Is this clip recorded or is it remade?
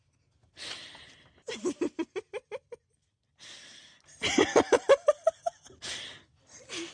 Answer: recorded